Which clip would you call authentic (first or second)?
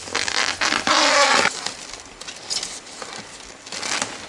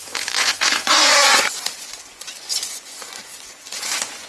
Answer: first